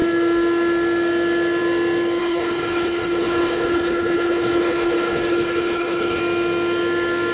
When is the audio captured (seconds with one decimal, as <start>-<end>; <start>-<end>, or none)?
0.0-2.2; 6.2-7.3

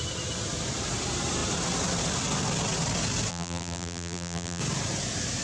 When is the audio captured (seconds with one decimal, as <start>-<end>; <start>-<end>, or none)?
0.0-3.3; 4.6-5.4

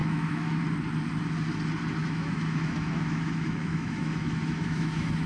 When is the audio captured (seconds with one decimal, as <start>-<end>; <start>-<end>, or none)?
0.6-2.0

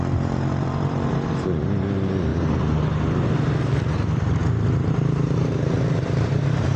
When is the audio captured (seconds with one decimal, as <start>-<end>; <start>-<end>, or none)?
2.3-3.6; 4.4-4.9

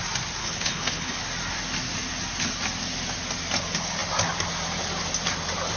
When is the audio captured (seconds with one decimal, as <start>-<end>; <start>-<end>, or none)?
0.0-0.4; 1.2-5.8

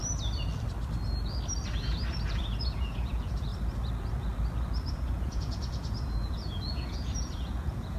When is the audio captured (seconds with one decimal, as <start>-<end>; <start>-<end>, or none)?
0.0-2.3; 3.5-4.9

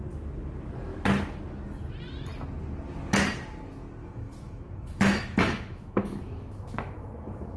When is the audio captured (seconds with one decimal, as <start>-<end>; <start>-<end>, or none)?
0.0-4.0